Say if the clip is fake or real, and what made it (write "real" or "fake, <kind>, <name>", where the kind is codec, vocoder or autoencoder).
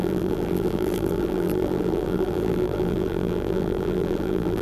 fake, vocoder, BigVGAN v2